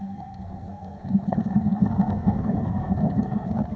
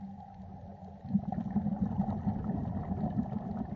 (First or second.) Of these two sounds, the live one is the second